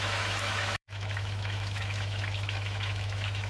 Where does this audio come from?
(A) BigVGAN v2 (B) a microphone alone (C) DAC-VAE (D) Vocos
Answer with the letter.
C